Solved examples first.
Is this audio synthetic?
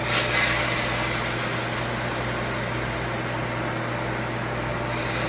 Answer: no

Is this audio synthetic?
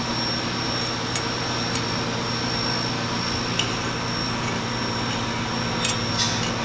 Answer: no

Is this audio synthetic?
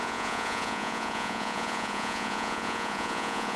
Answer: yes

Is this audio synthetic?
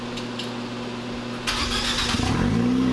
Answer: no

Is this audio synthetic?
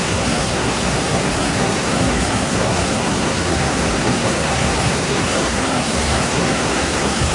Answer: yes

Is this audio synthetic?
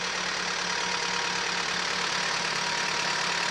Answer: no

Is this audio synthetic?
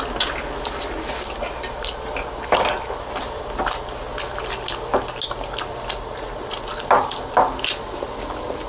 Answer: no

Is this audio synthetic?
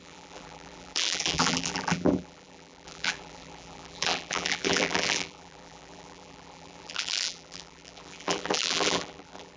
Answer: yes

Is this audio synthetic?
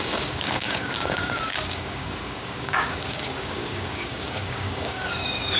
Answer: yes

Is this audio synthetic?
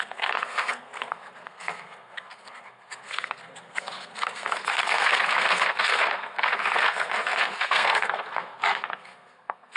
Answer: yes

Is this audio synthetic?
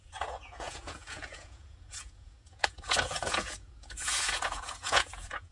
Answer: yes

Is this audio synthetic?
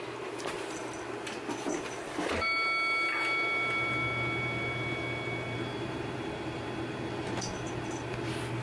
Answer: no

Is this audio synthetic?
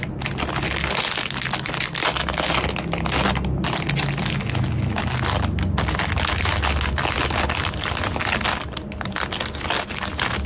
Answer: no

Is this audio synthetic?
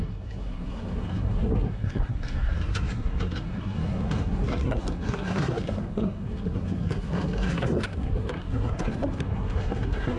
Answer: yes